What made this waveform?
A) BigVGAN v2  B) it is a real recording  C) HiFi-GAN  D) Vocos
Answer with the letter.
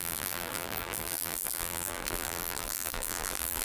A